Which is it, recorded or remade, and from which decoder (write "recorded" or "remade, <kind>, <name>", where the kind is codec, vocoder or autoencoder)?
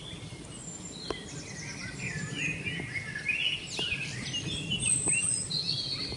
recorded